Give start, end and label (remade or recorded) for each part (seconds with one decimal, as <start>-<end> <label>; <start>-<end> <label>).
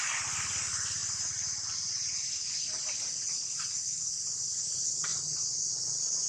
0.0-1.0 recorded; 1.0-2.4 remade; 2.4-6.3 recorded